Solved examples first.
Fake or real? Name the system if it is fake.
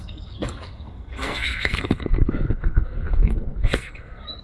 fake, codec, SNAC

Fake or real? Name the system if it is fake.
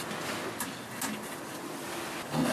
real